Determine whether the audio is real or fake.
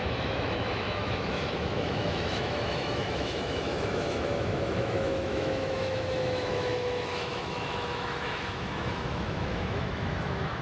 fake